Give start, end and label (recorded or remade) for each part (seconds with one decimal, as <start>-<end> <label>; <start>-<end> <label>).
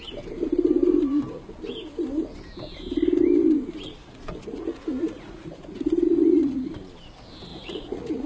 0.0-4.0 recorded; 4.0-6.7 remade; 6.7-7.5 recorded; 7.5-8.3 remade